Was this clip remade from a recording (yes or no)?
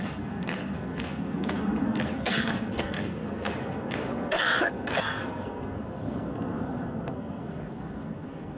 yes